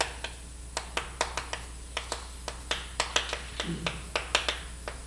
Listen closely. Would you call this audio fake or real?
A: real